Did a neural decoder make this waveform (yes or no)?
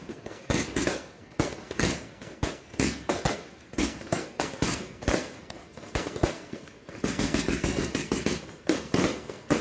yes